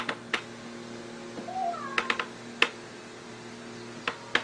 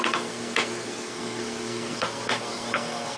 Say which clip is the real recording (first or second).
first